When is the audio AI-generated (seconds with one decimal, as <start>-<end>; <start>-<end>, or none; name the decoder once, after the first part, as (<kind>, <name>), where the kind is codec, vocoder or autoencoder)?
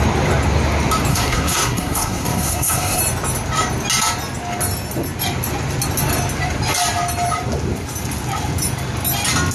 1.1-3.0 (codec, SNAC)